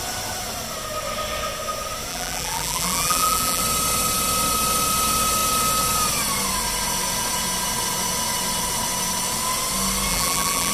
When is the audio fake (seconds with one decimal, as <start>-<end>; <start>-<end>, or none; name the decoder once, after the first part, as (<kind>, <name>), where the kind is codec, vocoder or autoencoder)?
2.1-3.6 (vocoder, BigVGAN v2); 10.1-10.7